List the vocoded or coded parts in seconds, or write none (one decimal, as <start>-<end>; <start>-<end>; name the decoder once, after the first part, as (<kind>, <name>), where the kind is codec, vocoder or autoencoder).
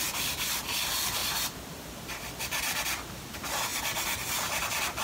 0.0-1.2 (vocoder, BigVGAN v2); 3.1-3.7; 4.4-5.0